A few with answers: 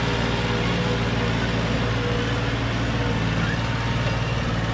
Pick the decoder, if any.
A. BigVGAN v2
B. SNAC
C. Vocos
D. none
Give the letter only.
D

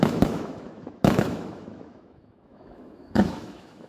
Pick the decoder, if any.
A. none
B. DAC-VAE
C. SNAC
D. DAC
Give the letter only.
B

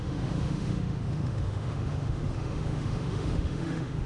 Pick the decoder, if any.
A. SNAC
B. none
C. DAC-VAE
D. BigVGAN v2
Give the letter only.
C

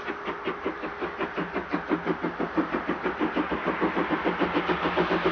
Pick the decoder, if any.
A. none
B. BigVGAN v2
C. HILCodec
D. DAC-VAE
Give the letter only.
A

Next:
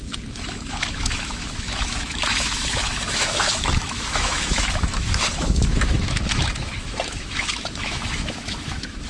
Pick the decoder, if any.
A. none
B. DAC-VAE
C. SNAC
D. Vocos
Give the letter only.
B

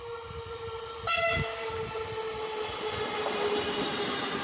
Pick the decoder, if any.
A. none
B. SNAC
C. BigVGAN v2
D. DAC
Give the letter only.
A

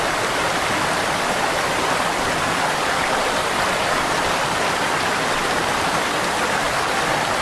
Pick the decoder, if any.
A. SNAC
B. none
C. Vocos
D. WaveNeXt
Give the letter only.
B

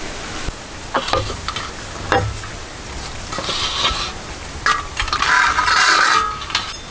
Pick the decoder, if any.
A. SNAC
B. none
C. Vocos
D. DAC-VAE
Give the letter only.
B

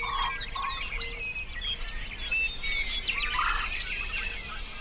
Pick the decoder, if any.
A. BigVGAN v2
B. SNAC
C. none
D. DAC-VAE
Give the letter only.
C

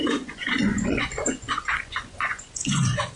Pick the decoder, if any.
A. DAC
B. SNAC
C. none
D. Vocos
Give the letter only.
D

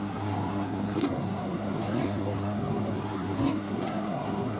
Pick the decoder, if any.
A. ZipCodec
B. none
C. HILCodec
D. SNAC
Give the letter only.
D